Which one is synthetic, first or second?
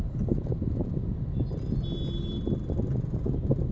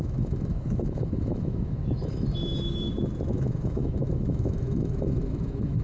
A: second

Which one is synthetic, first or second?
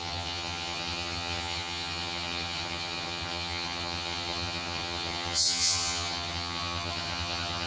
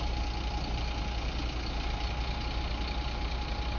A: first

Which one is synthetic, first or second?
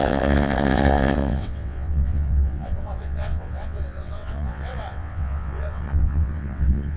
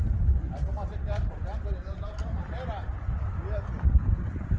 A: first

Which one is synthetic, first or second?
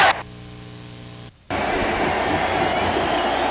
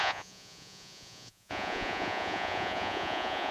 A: second